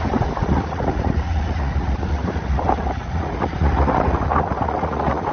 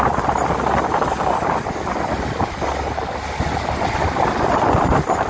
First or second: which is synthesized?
first